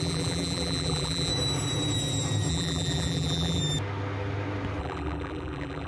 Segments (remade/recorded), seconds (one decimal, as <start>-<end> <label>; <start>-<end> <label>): 0.0-1.3 remade; 1.3-2.5 recorded; 2.5-3.6 remade; 3.6-4.8 recorded; 4.8-5.9 remade